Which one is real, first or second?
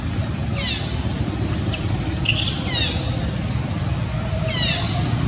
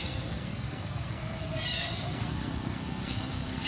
first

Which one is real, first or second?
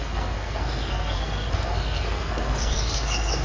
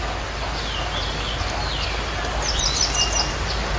second